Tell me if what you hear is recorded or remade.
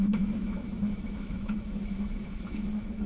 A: remade